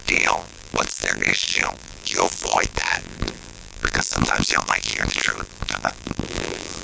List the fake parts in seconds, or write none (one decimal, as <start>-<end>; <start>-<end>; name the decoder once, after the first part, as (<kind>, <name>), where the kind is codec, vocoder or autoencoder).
0.0-6.8 (vocoder, BigVGAN v2)